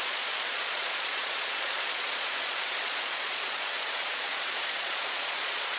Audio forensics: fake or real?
fake